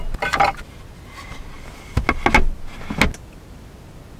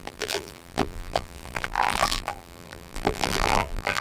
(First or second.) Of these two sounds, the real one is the first